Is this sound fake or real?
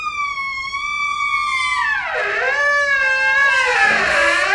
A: real